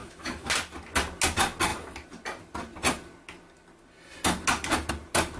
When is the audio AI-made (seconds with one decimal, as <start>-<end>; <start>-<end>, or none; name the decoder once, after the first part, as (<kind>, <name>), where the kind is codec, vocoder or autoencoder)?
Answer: 0.0-0.5 (autoencoder, DAC-VAE)